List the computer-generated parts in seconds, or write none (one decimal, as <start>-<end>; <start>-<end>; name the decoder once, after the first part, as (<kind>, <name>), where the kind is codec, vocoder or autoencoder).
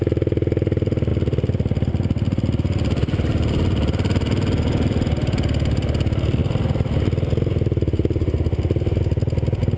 none